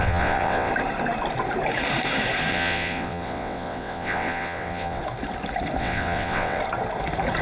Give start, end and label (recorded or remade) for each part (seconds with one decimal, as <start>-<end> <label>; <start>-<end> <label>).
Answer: 0.0-0.7 remade; 0.7-2.5 recorded; 2.5-5.0 remade; 5.0-5.8 recorded; 5.8-6.6 remade; 6.6-7.4 recorded